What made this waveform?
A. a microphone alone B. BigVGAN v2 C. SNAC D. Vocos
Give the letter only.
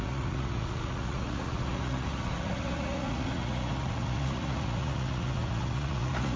D